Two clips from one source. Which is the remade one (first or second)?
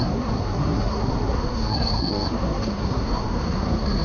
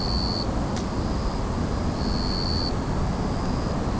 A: first